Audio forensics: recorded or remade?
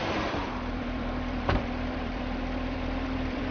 remade